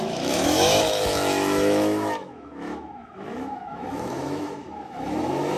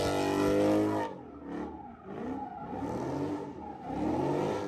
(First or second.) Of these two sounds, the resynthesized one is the first